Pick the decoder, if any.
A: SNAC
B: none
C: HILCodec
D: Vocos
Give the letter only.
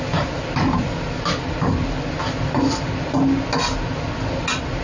B